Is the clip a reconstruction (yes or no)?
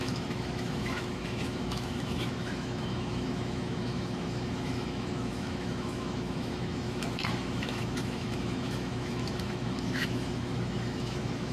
yes